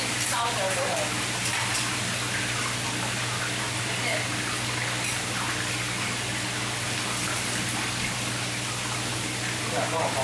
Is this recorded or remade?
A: recorded